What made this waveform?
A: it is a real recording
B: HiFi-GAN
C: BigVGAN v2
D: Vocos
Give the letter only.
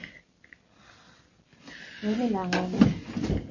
A